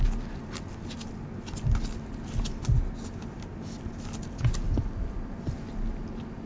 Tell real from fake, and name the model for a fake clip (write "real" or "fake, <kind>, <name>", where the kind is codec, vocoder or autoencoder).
real